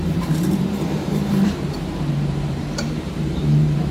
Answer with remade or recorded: remade